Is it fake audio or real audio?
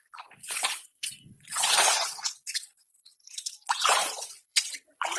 fake